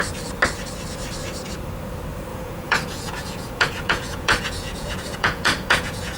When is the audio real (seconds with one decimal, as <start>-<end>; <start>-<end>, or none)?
0.0-2.3